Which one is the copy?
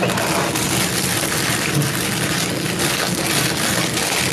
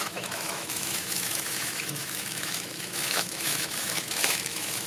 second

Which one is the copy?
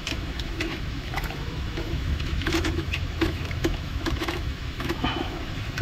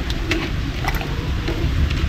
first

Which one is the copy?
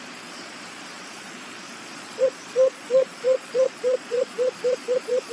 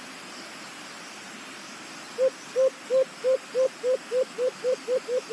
first